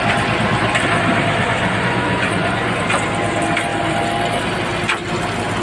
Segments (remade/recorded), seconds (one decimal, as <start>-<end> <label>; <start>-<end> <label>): 0.0-1.4 recorded; 1.4-2.8 remade; 2.8-5.6 recorded